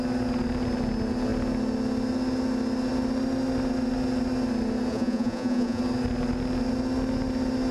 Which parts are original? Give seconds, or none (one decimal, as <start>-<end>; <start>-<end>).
0.0-4.9; 5.8-7.7